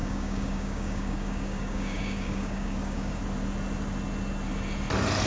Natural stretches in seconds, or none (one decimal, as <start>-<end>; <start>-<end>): 3.2-5.3